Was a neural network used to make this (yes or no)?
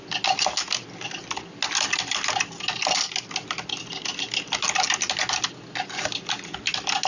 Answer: no